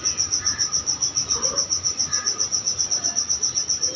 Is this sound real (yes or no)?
yes